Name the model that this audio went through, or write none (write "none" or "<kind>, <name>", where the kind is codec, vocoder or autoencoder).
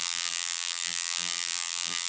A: vocoder, BigVGAN v2